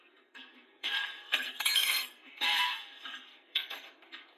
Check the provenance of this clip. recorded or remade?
remade